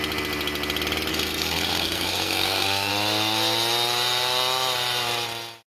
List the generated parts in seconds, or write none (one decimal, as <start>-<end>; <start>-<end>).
1.1-2.9